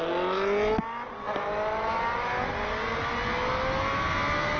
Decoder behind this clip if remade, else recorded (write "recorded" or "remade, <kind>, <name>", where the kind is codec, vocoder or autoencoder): recorded